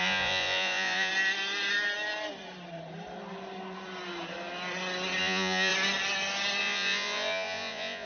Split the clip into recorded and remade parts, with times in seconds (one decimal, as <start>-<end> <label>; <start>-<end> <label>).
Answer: 0.0-1.1 remade; 1.1-5.2 recorded; 5.2-5.7 remade; 5.7-6.6 recorded; 6.6-8.1 remade